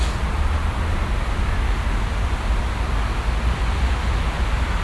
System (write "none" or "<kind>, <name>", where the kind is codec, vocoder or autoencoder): none